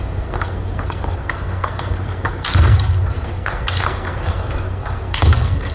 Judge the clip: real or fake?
fake